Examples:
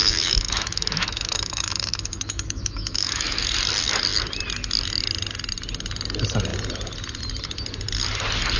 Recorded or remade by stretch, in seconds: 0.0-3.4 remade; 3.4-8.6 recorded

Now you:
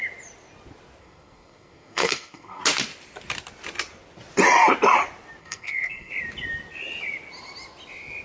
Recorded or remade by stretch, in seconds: 0.0-1.0 recorded; 1.0-2.6 remade; 2.6-5.4 recorded; 5.4-6.1 remade; 6.1-8.2 recorded

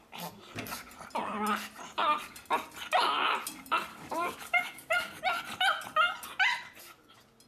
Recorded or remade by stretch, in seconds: 0.0-3.9 recorded; 3.9-5.2 remade; 5.2-7.5 recorded

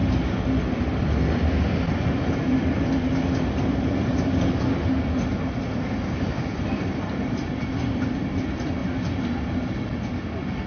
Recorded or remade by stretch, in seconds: 0.0-3.9 remade; 3.9-5.7 recorded; 5.7-8.8 remade; 8.8-10.7 recorded

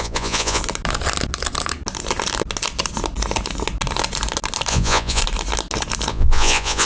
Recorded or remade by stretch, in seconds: 0.0-0.6 remade; 0.6-4.7 recorded; 4.7-5.2 remade; 5.2-6.1 recorded; 6.1-6.9 remade

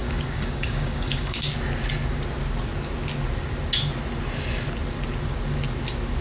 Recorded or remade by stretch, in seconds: 0.0-1.5 remade; 1.5-6.2 recorded